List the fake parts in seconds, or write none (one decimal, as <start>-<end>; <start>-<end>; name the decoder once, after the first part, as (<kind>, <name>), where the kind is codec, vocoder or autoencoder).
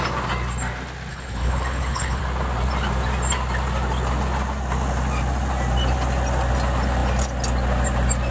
1.1-2.2 (codec, HILCodec)